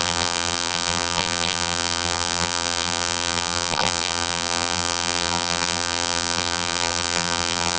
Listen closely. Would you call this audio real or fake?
fake